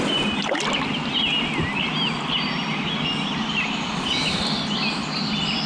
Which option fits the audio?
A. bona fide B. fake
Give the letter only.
A